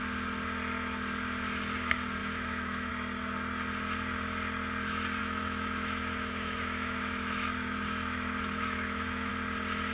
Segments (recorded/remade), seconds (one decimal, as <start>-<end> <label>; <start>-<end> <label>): 0.0-2.2 recorded; 2.2-2.9 remade; 2.9-5.2 recorded; 5.2-9.3 remade; 9.3-9.9 recorded